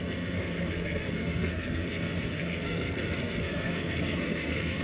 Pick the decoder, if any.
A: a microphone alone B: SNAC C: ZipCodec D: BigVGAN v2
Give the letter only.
B